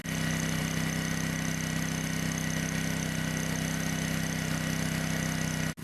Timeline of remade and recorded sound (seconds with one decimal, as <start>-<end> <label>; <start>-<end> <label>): 0.0-5.8 recorded